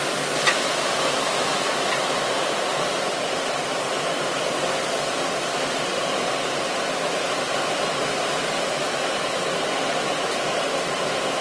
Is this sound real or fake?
real